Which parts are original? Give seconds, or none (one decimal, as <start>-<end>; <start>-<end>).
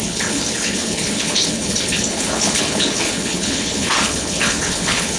none